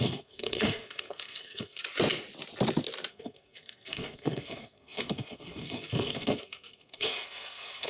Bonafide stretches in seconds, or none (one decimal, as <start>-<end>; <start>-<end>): 1.8-3.1